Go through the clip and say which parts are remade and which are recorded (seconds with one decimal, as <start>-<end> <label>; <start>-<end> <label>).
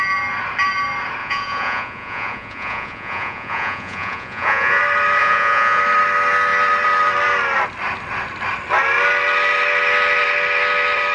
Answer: 0.0-1.2 recorded; 1.2-4.8 remade; 4.8-5.2 recorded; 5.2-5.8 remade; 5.8-11.1 recorded